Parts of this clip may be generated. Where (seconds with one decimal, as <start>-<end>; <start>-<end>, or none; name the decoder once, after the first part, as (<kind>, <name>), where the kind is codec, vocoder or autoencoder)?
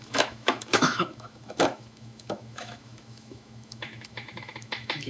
0.0-5.1 (autoencoder, DAC-VAE)